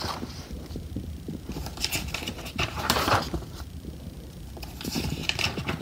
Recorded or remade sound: remade